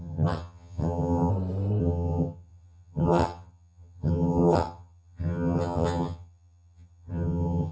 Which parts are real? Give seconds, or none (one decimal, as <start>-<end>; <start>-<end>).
1.3-1.8